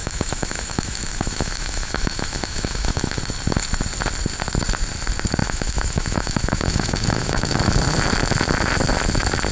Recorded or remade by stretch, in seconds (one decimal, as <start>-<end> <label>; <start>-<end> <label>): 0.0-3.2 remade; 3.2-5.4 recorded; 5.4-7.8 remade; 7.8-9.5 recorded